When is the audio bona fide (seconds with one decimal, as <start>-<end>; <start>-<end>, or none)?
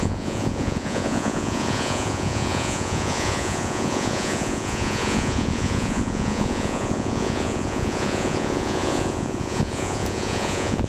none